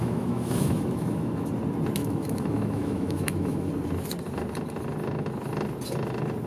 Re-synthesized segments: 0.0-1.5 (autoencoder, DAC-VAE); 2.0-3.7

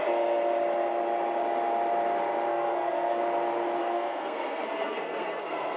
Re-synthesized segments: 2.5-3.2 (codec, SNAC); 3.8-5.8

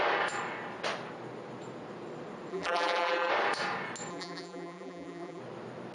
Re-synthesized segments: 2.5-3.3 (vocoder, BigVGAN v2); 4.1-5.4